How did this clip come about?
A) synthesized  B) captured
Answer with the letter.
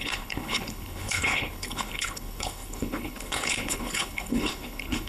A